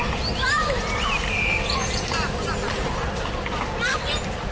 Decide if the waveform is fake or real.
fake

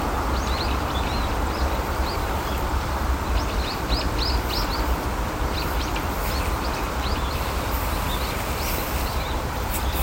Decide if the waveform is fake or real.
fake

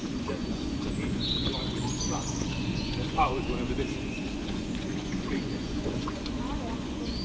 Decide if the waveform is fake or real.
fake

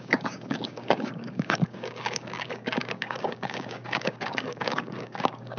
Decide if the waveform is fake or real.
fake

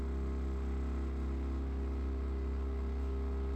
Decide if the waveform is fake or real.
real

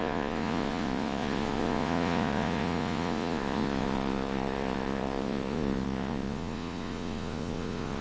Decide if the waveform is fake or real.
fake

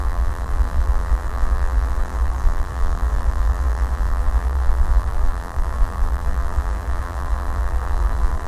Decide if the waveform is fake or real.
fake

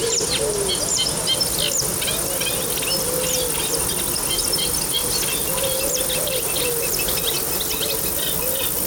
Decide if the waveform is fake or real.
real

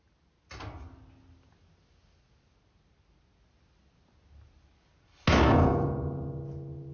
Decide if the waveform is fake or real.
real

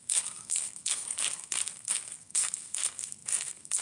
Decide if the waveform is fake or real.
fake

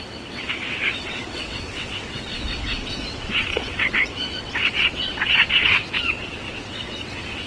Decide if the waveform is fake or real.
fake